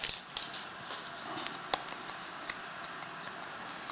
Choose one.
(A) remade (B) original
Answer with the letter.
B